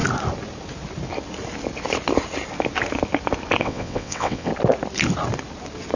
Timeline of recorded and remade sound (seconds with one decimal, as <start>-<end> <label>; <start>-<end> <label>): 0.0-3.6 recorded; 3.6-4.5 remade; 4.5-6.0 recorded